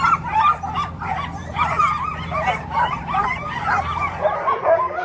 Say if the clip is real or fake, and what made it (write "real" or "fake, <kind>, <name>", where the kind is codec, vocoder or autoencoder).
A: fake, vocoder, BigVGAN v2